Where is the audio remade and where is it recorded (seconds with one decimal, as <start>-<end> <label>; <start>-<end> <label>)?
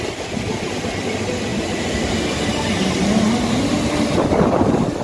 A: 0.0-5.0 recorded